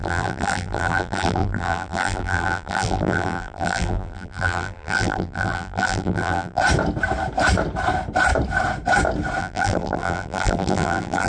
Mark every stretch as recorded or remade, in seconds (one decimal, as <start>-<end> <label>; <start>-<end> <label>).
0.0-6.6 remade; 6.6-9.4 recorded; 9.4-11.3 remade